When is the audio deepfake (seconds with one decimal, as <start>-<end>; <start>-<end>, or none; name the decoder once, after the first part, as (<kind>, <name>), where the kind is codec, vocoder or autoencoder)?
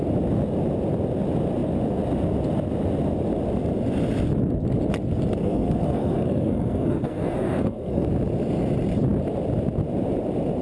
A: 5.4-8.1 (codec, SNAC)